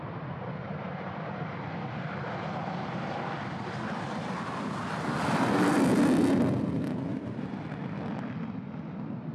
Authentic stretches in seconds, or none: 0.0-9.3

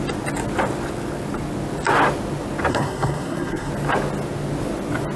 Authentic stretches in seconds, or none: 0.0-2.7; 3.7-5.2

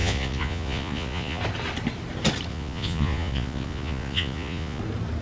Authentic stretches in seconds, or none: 1.4-2.5; 4.8-5.2

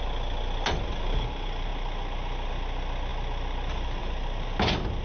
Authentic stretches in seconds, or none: 0.0-5.0

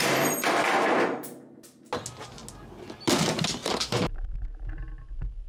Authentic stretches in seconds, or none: 1.3-3.6

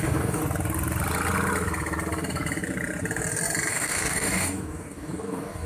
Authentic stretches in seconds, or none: 0.4-3.7

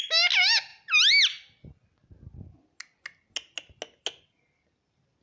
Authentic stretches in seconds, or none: 0.0-5.2

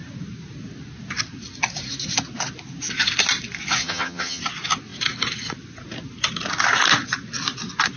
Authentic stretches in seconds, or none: 0.0-3.8; 4.4-8.0